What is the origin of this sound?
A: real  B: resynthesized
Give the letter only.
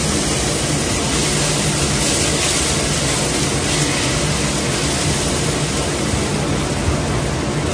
A